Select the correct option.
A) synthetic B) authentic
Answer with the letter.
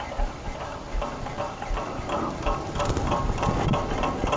B